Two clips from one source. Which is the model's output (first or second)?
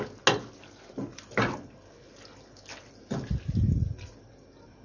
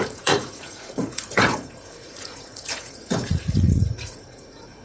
second